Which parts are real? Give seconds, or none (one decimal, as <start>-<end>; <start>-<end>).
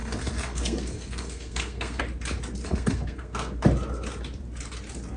2.0-2.6; 3.6-5.2